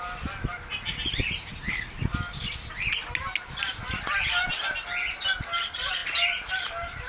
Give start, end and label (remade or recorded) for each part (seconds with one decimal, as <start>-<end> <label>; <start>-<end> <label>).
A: 0.0-7.1 recorded